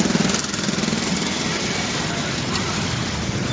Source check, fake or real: real